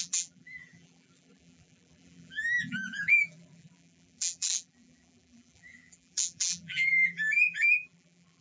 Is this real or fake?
fake